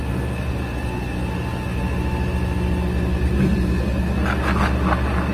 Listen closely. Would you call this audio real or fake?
real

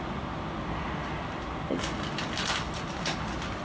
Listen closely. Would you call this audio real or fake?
real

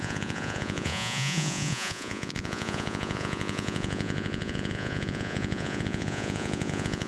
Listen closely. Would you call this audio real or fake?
fake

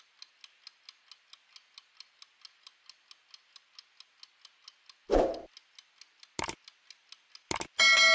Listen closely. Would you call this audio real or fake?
real